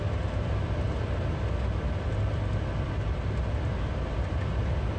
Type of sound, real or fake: real